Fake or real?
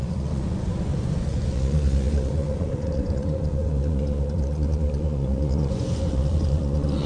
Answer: fake